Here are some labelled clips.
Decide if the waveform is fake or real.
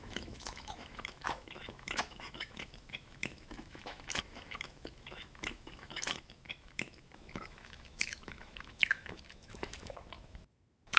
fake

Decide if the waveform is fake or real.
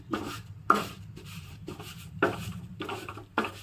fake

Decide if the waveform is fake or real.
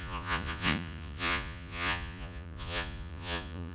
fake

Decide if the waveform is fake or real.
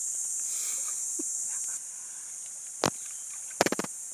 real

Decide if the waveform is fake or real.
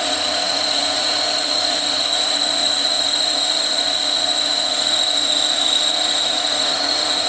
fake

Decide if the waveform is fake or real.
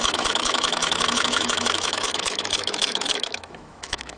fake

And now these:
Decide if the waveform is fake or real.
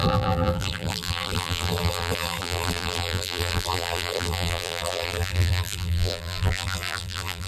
fake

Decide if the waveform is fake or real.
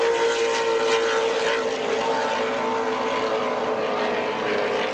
real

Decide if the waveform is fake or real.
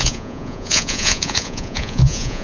fake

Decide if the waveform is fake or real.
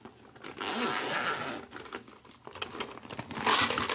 real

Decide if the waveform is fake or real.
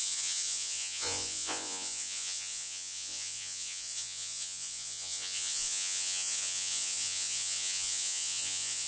fake